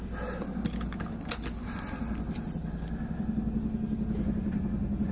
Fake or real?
real